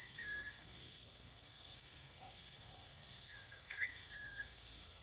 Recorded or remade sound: remade